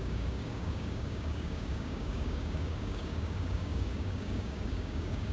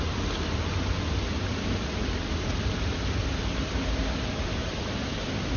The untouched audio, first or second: second